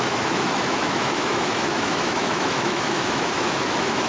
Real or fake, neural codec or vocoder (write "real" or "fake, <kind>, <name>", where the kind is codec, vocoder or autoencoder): fake, autoencoder, DAC-VAE